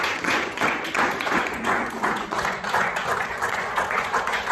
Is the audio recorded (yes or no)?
no